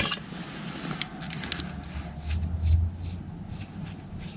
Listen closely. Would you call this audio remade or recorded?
recorded